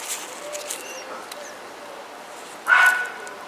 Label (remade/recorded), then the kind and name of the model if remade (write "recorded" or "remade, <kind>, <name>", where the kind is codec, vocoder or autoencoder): recorded